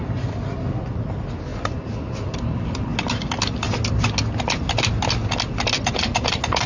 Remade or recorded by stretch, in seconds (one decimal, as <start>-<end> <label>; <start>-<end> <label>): 0.0-6.7 recorded